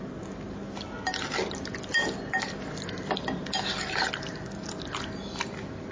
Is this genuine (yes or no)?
yes